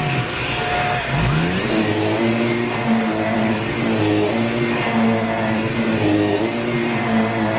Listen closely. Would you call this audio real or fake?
real